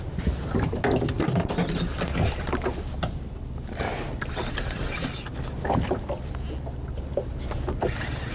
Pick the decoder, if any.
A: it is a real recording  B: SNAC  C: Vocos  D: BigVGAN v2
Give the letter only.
A